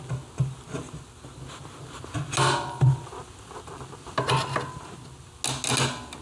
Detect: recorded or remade recorded